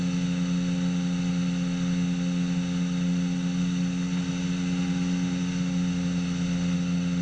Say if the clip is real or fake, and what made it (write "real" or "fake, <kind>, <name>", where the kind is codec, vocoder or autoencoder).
real